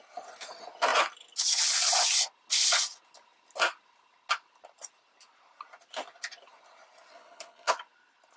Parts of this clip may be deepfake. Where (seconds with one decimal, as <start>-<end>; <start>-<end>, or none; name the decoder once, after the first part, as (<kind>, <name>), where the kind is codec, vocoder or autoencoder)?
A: 7.1-7.7 (codec, HILCodec)